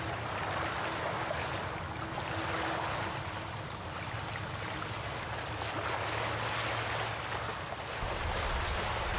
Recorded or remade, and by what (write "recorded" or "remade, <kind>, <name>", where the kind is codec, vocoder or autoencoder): recorded